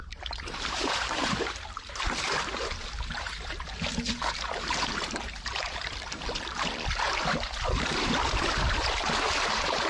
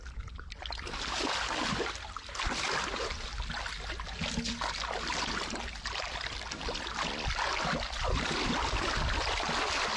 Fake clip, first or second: first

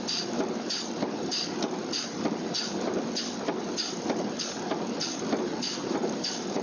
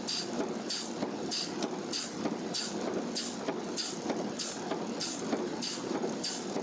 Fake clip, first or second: first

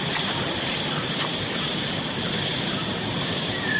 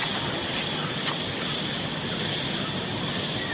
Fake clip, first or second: first